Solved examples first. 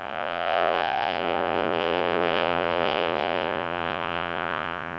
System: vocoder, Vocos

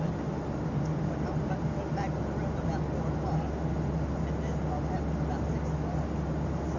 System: none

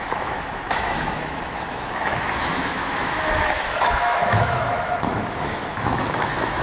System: autoencoder, DAC-VAE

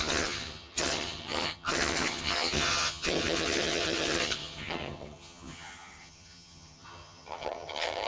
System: vocoder, HiFi-GAN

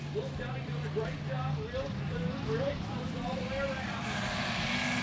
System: none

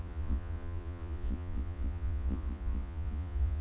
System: vocoder, Vocos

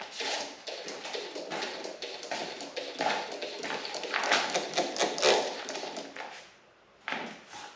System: none